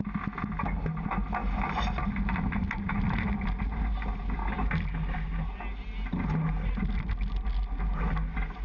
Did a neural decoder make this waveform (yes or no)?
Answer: no